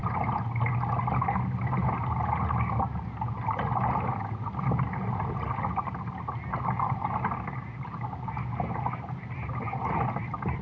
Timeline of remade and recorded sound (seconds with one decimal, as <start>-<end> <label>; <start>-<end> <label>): 0.0-10.6 recorded